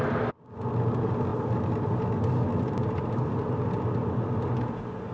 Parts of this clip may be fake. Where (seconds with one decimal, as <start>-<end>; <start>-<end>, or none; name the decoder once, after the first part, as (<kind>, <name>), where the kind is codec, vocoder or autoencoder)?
none